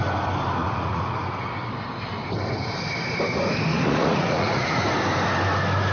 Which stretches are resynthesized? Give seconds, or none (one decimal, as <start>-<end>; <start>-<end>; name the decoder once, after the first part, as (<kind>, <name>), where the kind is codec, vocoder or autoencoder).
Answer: 0.6-1.2 (vocoder, Vocos); 3.7-4.9